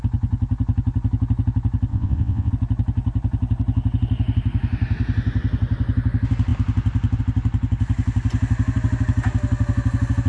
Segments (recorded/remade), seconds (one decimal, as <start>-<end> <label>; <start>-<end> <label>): 0.0-1.9 recorded; 1.9-2.5 remade; 2.5-10.3 recorded